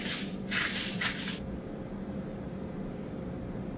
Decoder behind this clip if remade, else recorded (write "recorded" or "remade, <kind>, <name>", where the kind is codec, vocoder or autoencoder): recorded